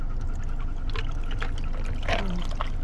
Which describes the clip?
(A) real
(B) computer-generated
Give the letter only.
A